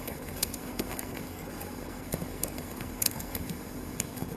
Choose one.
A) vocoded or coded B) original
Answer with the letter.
A